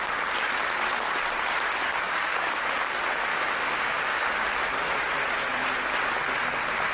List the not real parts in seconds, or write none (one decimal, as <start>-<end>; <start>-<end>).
1.9-2.6; 3.3-4.2